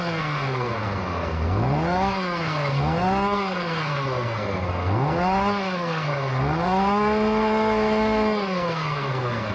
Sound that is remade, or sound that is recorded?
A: remade